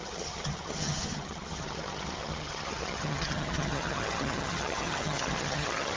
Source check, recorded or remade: remade